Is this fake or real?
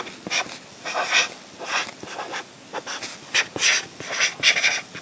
real